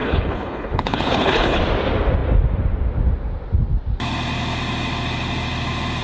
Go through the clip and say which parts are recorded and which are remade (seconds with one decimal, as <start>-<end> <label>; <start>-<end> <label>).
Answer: 0.0-1.6 remade; 1.6-6.0 recorded